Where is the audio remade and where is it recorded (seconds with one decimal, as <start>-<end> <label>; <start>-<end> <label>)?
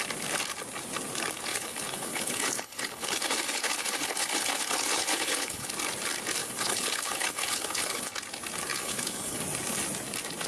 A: 0.0-1.5 recorded; 1.5-5.7 remade; 5.7-6.4 recorded; 6.4-8.1 remade; 8.1-8.7 recorded; 8.7-9.4 remade; 9.4-10.5 recorded